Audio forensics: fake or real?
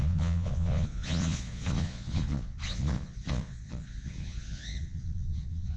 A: fake